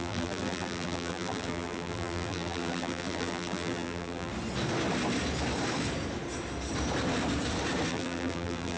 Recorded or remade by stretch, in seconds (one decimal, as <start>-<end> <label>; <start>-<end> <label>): 0.0-4.3 remade; 4.3-7.9 recorded; 7.9-8.8 remade